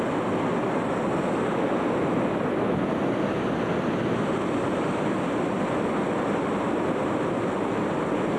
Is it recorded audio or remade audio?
recorded